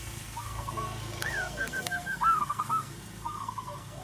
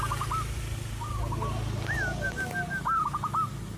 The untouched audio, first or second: second